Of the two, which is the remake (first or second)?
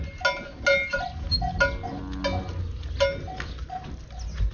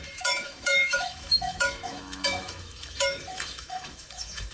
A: second